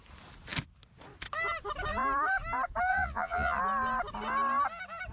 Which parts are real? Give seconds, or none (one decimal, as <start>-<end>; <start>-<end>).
0.0-2.9; 3.6-5.1